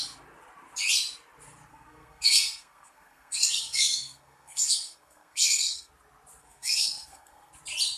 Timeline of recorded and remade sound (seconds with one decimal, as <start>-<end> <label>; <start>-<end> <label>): 0.0-1.7 recorded; 1.7-5.9 remade; 5.9-6.4 recorded; 6.4-7.5 remade; 7.5-8.0 recorded